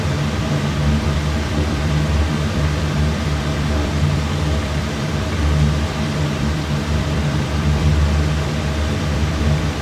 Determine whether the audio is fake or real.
fake